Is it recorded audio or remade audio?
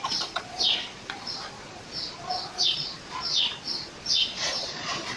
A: remade